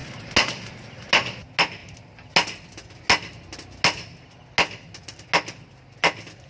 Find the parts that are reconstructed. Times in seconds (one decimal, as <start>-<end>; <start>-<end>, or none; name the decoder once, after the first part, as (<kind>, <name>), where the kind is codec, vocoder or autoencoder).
none